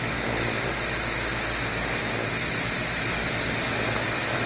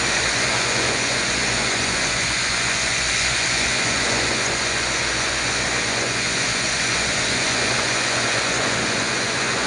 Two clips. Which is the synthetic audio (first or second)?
second